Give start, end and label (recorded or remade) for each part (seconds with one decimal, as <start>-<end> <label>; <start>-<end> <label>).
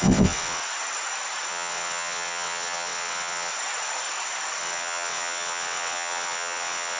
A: 0.0-0.6 remade; 0.6-1.5 recorded; 1.5-3.5 remade; 3.5-4.6 recorded; 4.6-7.0 remade